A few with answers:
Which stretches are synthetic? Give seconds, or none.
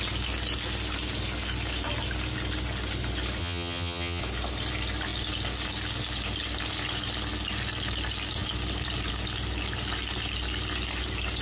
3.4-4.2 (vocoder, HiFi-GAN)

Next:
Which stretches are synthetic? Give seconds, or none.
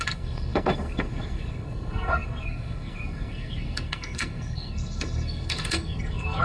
0.0-6.4 (codec, SNAC)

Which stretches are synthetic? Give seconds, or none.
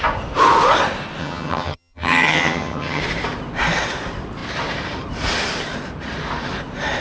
1.2-3.0 (vocoder, HiFi-GAN)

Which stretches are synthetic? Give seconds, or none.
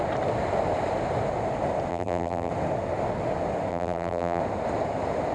1.9-2.5 (vocoder, BigVGAN v2); 3.7-4.4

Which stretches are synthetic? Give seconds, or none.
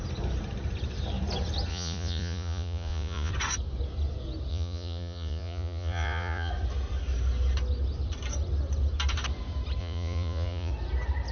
1.7-3.3 (vocoder, Vocos); 4.5-6.5; 9.8-10.7